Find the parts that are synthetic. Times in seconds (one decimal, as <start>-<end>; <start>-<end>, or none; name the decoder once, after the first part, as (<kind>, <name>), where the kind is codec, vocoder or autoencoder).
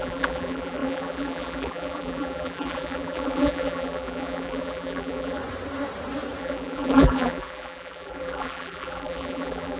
0.0-5.4 (vocoder, BigVGAN v2); 6.4-9.8